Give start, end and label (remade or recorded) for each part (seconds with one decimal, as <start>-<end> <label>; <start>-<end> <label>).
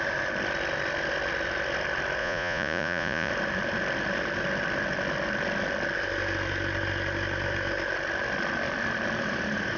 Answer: 0.0-2.2 recorded; 2.2-3.3 remade; 3.3-9.8 recorded